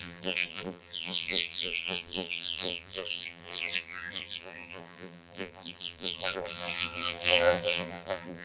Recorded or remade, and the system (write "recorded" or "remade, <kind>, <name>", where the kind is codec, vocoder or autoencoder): remade, vocoder, BigVGAN v2